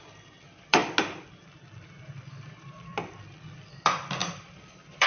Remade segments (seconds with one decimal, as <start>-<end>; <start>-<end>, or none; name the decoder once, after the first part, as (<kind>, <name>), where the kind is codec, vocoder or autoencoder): 0.0-0.8 (vocoder, BigVGAN v2); 2.4-2.9; 3.5-5.1